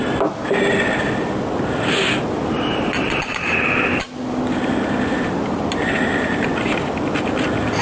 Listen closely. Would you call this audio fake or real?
real